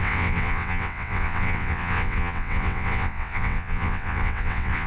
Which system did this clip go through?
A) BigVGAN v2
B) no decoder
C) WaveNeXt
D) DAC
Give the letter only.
C